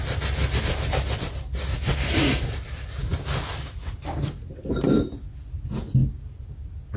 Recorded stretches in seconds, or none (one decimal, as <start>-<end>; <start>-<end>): 0.0-7.0